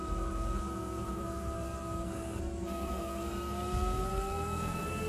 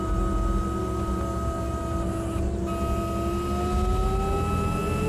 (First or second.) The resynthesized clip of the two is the first